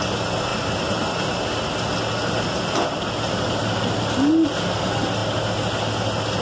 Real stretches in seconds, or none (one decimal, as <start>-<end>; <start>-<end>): 0.0-6.4